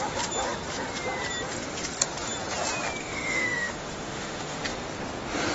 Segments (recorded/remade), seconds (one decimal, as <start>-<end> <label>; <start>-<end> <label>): 0.0-3.0 recorded; 3.0-4.6 remade; 4.6-5.5 recorded

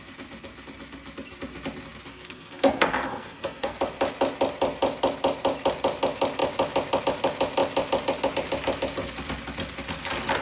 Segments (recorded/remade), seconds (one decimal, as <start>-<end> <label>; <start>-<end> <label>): 0.0-2.1 recorded; 2.1-3.8 remade; 3.8-10.4 recorded

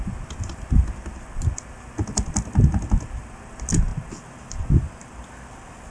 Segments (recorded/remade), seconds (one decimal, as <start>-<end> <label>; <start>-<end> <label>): 0.0-5.9 recorded

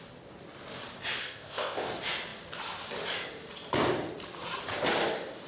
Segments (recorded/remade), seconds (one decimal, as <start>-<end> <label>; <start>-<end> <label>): 0.0-1.2 recorded; 1.2-1.9 remade; 1.9-5.5 recorded

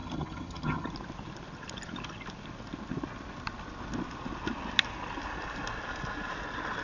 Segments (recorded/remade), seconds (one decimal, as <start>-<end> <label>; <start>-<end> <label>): 0.0-0.9 remade; 0.9-6.8 recorded

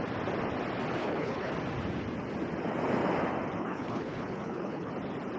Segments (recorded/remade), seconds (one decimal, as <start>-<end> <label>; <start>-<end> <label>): 0.0-1.0 recorded; 1.0-1.5 remade; 1.5-3.6 recorded; 3.6-4.9 remade; 4.9-5.4 recorded

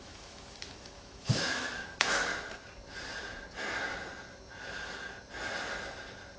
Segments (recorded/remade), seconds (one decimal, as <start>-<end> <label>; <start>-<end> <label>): 0.0-2.3 remade; 2.3-6.4 recorded

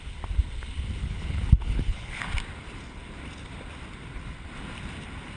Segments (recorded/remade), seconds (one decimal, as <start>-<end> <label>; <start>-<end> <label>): 0.0-1.0 recorded; 1.0-2.3 remade; 2.3-5.4 recorded